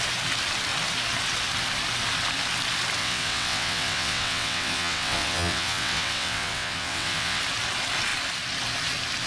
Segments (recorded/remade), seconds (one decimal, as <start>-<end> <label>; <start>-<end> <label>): 0.0-3.0 recorded; 3.0-7.4 remade; 7.4-9.3 recorded